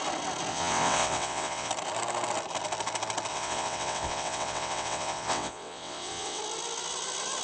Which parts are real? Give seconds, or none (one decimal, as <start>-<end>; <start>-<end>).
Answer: 0.0-0.5; 1.7-3.3; 6.4-7.4